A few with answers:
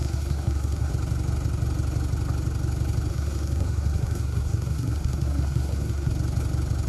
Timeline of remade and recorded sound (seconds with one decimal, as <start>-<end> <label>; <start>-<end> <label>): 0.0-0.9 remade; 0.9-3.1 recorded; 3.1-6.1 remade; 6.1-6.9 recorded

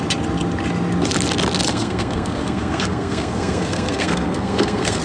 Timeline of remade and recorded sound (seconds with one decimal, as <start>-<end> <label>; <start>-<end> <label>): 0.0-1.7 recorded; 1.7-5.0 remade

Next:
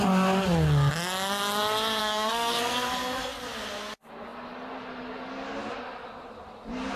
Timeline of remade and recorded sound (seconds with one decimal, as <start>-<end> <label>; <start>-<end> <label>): 0.0-2.0 recorded; 2.0-3.3 remade; 3.3-7.0 recorded

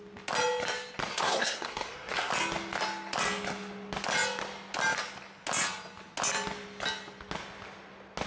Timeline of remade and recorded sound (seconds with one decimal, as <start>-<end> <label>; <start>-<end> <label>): 0.0-1.1 recorded; 1.1-2.3 remade; 2.3-8.3 recorded

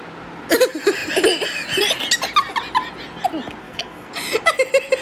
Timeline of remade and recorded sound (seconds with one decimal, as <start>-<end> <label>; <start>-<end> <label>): 0.0-3.6 recorded; 3.6-4.1 remade; 4.1-5.0 recorded

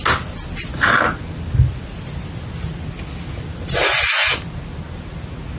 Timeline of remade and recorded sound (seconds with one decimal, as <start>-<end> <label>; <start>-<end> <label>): 0.0-5.6 recorded

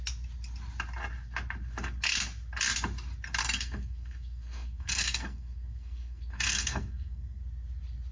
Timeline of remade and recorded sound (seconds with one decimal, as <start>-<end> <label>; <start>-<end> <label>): 0.0-3.4 recorded; 3.4-7.4 remade; 7.4-8.1 recorded